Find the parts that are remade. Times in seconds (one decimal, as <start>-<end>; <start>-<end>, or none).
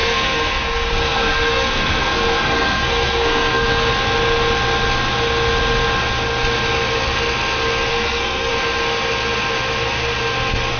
0.0-3.9; 7.9-8.5